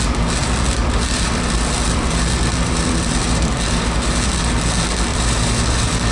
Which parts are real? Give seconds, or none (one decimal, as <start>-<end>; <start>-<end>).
0.0-0.4; 4.1-5.1

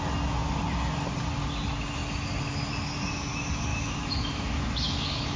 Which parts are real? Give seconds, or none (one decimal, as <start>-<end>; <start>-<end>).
0.0-3.7